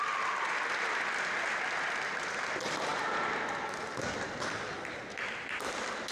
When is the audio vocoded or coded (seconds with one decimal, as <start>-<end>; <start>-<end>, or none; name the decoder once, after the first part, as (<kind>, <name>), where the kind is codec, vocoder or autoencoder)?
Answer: none